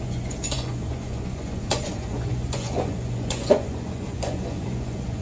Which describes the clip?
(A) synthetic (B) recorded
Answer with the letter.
A